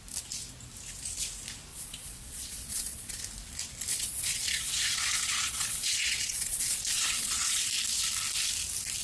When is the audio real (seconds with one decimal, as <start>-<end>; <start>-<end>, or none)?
0.0-1.7; 3.2-3.9; 7.7-9.0